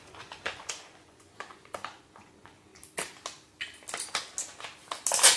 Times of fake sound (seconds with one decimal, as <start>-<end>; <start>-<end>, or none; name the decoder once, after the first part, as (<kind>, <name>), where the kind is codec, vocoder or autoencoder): 0.0-2.7 (vocoder, Vocos)